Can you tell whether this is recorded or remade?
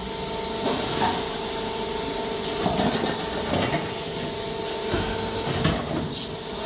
recorded